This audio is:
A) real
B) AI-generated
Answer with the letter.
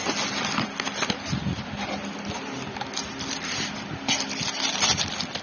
A